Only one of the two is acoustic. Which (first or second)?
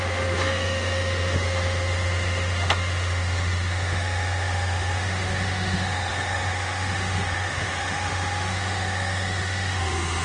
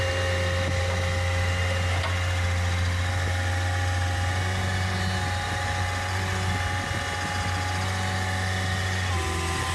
second